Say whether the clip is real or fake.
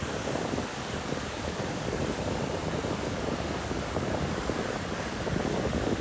fake